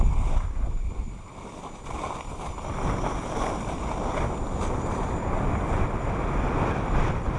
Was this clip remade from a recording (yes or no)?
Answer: no